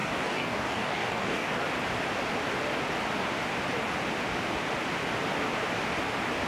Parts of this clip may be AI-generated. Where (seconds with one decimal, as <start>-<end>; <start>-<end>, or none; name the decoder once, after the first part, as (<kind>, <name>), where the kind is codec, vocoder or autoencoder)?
0.0-1.6 (codec, DAC)